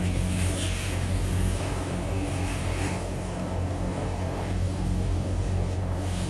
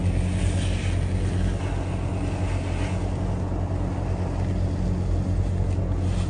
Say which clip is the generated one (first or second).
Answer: first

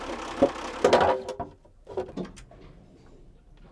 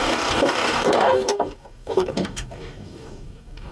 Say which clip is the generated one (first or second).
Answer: second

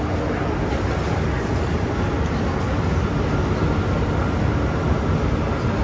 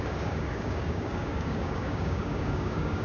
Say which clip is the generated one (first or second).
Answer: second